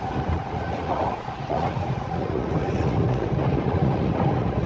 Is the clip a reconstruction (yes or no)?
yes